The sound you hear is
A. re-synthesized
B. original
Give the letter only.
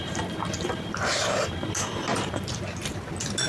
B